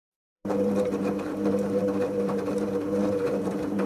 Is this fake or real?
fake